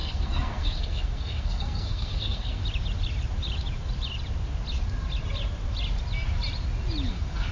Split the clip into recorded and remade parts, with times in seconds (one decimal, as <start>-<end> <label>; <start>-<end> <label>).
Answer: 0.0-2.6 remade; 2.6-7.1 recorded; 7.1-7.5 remade